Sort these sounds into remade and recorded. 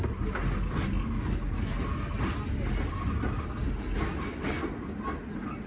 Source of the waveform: recorded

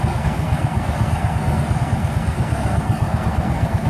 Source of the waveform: remade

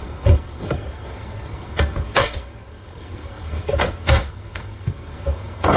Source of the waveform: remade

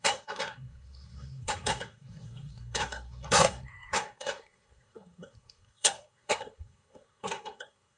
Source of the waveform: remade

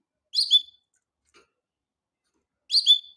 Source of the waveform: recorded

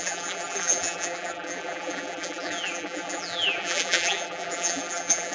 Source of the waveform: remade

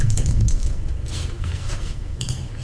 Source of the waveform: remade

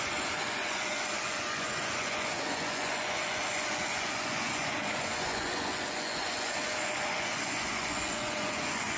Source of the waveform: remade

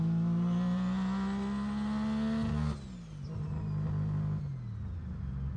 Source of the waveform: recorded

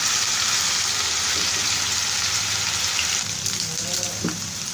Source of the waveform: recorded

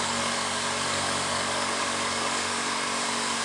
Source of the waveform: remade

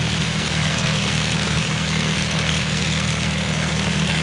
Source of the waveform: remade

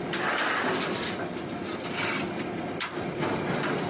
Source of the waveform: recorded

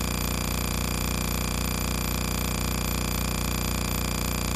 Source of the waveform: remade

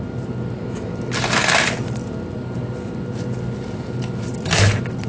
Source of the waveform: recorded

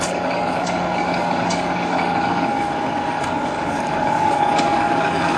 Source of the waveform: remade